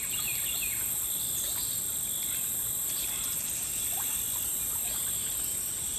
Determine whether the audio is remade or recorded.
recorded